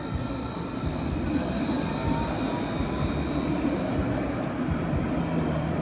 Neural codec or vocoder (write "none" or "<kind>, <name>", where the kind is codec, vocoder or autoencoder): none